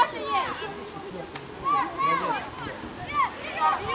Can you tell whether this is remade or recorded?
recorded